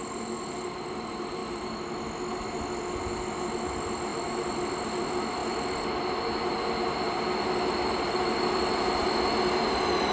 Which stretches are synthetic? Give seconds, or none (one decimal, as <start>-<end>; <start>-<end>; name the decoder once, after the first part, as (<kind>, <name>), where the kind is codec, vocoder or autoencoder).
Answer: none

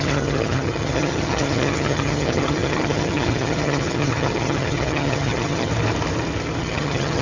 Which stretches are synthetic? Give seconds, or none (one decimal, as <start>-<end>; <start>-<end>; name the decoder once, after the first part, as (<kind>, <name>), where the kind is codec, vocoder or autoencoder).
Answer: 0.0-5.7 (vocoder, HiFi-GAN); 6.6-7.2

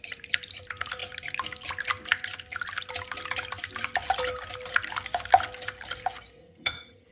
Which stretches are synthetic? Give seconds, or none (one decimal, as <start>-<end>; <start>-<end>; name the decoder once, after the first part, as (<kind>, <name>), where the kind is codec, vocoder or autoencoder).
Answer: 6.4-7.1 (vocoder, HiFi-GAN)

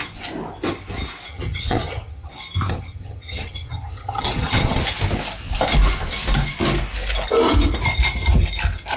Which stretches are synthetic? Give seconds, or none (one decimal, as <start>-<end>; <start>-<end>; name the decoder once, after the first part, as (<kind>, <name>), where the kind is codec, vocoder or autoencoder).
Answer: 1.3-2.3 (vocoder, HiFi-GAN); 2.7-4.8